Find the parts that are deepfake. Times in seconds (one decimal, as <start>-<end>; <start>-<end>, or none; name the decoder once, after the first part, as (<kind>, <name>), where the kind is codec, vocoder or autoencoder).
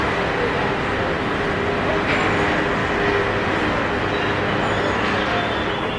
none